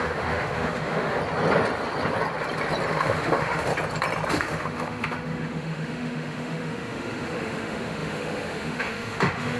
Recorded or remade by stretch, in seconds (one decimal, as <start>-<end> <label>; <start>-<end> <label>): 0.0-1.2 remade; 1.2-2.9 recorded; 2.9-3.7 remade; 3.7-4.3 recorded; 4.3-9.6 remade